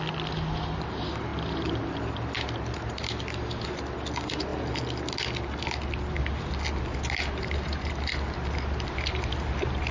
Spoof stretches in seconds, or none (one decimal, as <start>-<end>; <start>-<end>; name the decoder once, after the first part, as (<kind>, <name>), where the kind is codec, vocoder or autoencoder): 0.0-4.5 (vocoder, BigVGAN v2); 7.6-9.9